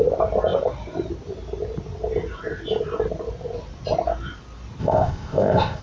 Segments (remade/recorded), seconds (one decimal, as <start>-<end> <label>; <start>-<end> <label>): 0.0-4.8 recorded; 4.8-5.8 remade